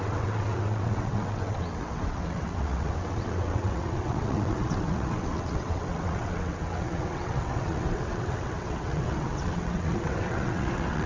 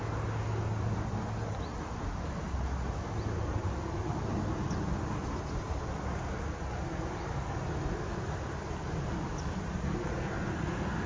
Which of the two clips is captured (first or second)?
second